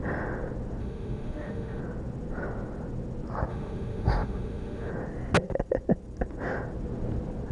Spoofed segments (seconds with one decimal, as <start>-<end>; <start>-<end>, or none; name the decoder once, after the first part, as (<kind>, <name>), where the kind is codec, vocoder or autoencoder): 0.8-1.8 (autoencoder, DAC-VAE); 3.5-4.9